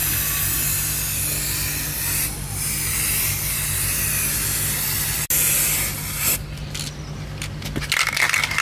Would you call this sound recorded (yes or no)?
yes